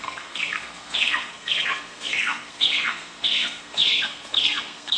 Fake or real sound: fake